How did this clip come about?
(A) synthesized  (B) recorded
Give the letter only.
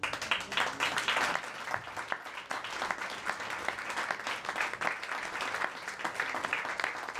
B